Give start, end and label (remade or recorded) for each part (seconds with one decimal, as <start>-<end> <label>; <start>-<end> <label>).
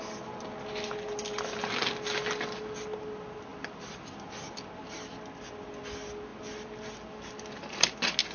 0.0-8.3 recorded